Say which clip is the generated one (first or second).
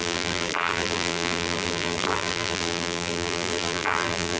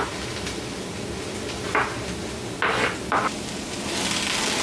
first